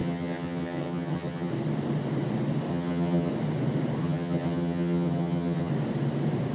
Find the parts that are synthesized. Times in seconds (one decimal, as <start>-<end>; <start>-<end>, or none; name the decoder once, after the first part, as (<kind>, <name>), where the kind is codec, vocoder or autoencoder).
0.0-1.5 (vocoder, HiFi-GAN); 2.7-3.3; 4.0-5.7